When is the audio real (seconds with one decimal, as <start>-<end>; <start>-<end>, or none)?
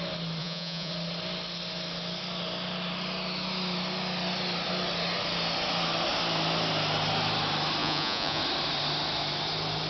0.0-0.4; 0.9-7.8; 8.4-9.9